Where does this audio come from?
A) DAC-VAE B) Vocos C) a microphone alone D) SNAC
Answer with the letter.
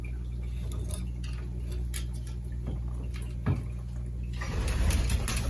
C